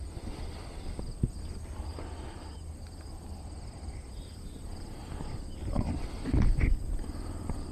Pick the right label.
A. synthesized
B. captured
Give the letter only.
B